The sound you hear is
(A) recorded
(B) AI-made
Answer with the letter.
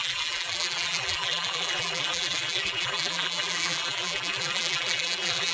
B